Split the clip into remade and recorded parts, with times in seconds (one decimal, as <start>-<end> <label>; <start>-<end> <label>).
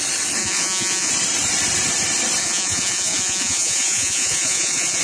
0.0-0.4 recorded; 0.4-1.1 remade; 1.1-2.4 recorded; 2.4-5.0 remade